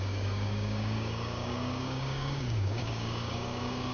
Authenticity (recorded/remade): remade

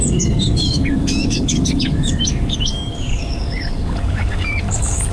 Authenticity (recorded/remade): remade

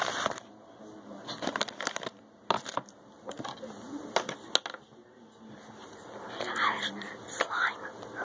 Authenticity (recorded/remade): recorded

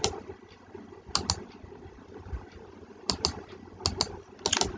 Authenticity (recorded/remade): recorded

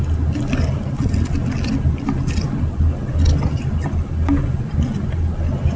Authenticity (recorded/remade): recorded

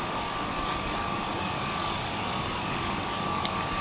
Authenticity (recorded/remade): remade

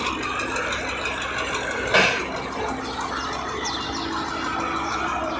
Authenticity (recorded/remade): recorded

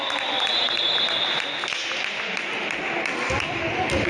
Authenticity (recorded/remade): recorded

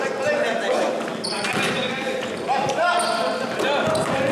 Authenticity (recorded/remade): recorded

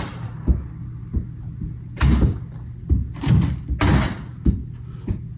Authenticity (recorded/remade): recorded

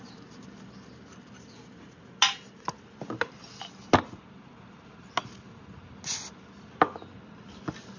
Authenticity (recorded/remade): recorded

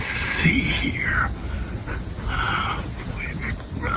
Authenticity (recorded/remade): recorded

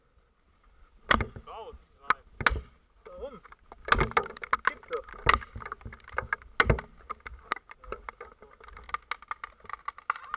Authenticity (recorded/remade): recorded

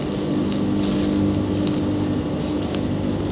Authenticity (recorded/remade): recorded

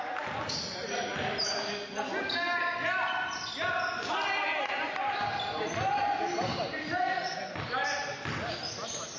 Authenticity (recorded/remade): recorded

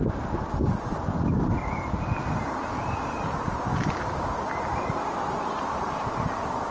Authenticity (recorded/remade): recorded